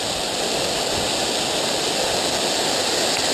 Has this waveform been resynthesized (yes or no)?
no